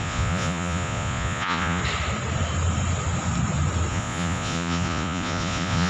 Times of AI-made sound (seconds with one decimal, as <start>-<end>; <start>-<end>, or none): 0.0-1.8; 3.9-5.9